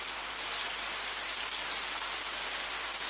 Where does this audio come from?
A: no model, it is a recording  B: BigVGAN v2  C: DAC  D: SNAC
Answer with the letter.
A